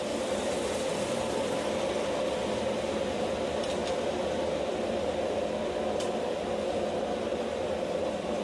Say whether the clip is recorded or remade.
recorded